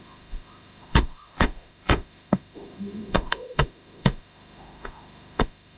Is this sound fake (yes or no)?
yes